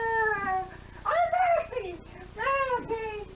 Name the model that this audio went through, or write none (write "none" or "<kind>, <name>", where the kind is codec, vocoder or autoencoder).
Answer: none